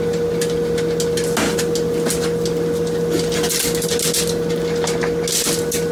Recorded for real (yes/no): yes